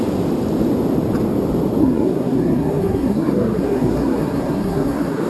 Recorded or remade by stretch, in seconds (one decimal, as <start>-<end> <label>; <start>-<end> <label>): 0.0-1.8 recorded; 1.8-5.3 remade